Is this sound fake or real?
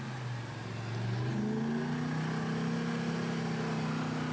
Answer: real